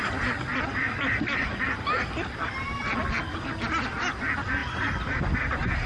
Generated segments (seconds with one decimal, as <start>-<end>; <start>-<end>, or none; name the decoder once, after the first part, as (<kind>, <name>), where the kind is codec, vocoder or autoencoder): none